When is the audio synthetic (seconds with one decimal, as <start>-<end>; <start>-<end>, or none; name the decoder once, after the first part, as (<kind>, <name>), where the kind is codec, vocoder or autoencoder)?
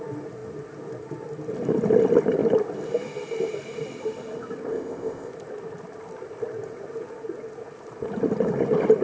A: 4.7-5.3 (codec, ZipCodec)